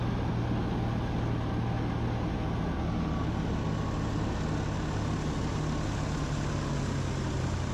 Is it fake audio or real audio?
real